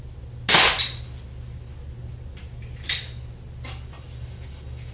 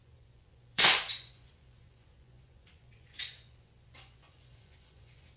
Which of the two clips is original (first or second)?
first